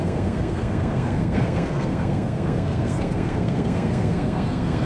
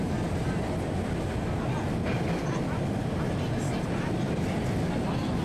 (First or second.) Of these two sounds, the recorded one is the second